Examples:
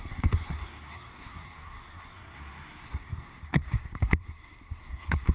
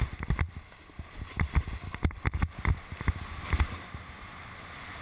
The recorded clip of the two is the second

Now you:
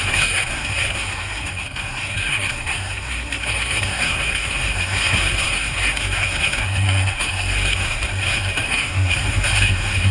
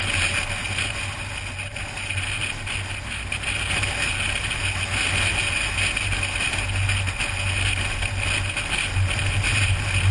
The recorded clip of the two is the second